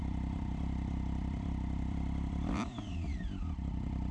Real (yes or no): no